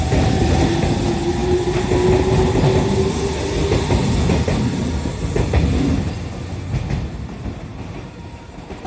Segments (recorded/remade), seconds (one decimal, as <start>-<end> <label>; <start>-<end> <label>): 0.0-7.7 recorded; 7.7-8.9 remade